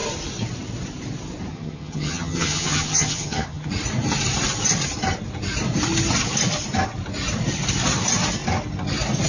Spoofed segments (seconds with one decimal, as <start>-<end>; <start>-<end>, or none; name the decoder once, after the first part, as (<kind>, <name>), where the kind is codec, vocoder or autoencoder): 1.5-3.7 (vocoder, HiFi-GAN)